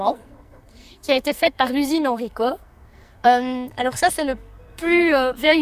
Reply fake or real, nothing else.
fake